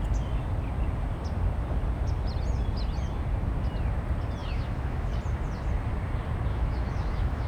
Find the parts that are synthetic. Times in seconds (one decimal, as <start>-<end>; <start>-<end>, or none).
4.4-5.1; 6.5-7.5